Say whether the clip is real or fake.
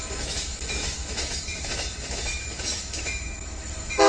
fake